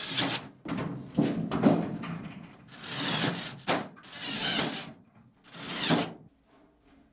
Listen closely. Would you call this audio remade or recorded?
recorded